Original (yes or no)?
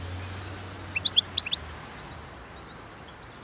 yes